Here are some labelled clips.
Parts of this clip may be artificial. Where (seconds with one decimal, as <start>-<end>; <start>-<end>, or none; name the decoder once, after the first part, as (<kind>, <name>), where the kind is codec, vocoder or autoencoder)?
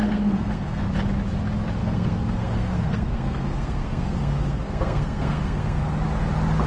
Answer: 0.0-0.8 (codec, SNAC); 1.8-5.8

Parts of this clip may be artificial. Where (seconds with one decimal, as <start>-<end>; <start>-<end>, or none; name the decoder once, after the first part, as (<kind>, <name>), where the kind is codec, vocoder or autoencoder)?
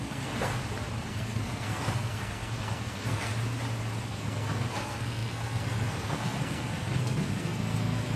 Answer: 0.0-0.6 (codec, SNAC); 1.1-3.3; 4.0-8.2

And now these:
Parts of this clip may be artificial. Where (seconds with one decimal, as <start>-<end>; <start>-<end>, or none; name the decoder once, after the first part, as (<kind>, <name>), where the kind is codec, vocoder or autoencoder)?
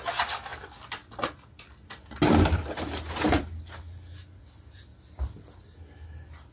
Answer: none